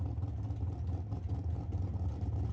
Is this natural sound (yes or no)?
yes